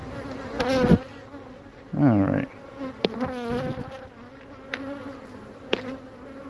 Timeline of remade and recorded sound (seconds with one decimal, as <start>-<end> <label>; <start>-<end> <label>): 0.0-6.5 recorded